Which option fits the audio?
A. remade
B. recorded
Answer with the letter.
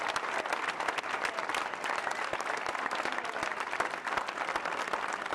B